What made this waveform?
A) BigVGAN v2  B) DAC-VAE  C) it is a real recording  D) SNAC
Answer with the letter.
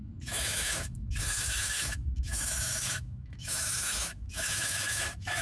B